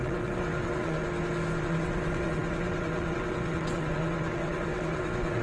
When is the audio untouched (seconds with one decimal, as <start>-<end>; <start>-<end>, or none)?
1.0-1.6